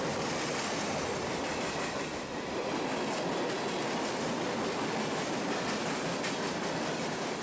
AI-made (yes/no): no